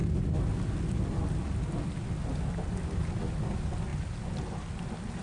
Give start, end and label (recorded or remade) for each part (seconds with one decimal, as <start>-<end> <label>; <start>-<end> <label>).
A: 0.0-5.2 recorded